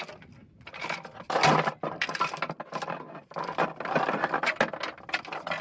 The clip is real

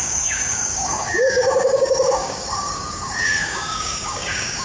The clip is fake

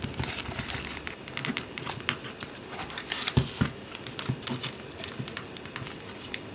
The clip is real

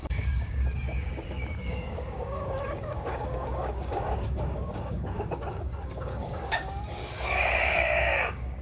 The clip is fake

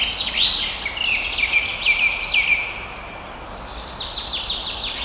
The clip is real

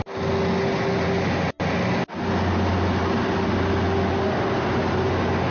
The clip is real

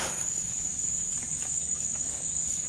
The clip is fake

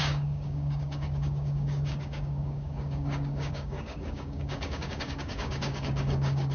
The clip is fake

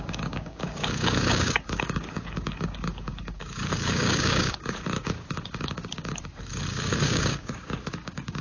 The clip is fake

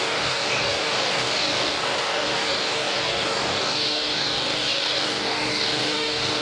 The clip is fake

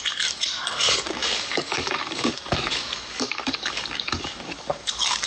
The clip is fake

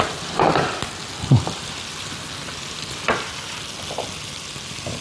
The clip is real